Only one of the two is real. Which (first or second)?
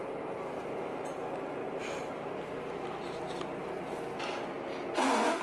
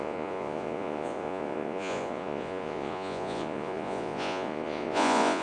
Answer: first